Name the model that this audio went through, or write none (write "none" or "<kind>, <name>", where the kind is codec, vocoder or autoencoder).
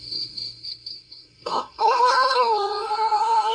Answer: codec, SNAC